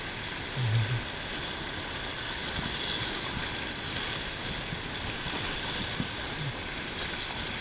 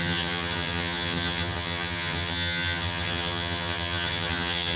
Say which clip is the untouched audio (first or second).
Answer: first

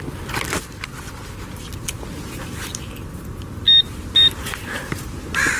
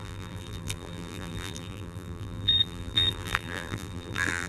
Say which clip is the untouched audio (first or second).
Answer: first